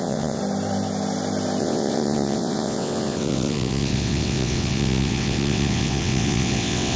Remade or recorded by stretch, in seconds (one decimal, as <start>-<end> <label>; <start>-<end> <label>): 0.0-0.4 remade; 0.4-1.6 recorded; 1.6-7.0 remade